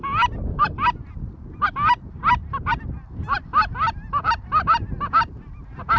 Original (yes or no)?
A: yes